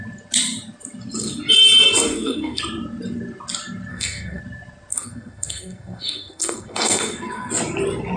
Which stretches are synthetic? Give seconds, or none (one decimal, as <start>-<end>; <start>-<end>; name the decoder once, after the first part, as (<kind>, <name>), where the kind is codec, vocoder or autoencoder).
2.1-2.6 (codec, SNAC); 3.9-4.4; 4.9-7.5